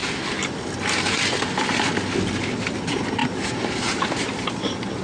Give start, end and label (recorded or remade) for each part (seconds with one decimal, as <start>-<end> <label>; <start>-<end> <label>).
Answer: 0.0-5.0 recorded